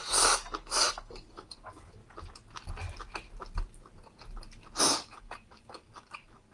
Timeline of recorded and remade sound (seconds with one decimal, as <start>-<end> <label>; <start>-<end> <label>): 0.0-0.6 recorded; 0.6-2.0 remade; 2.0-4.8 recorded; 4.8-6.5 remade